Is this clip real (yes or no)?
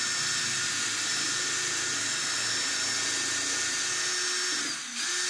yes